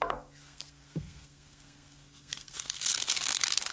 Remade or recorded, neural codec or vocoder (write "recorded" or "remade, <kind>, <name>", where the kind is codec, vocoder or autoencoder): remade, codec, SNAC